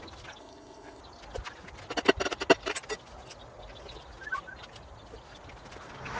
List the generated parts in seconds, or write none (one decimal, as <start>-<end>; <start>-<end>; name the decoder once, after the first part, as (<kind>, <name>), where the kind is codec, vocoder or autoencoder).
0.4-1.0 (codec, ZipCodec)